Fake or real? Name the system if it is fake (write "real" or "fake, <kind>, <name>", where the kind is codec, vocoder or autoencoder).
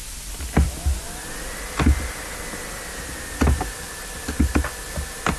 real